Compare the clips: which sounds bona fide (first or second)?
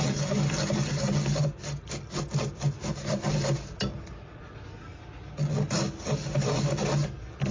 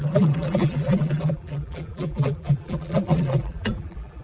first